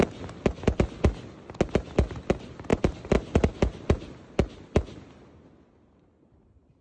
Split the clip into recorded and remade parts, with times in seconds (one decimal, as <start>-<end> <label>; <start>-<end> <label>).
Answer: 0.0-6.8 recorded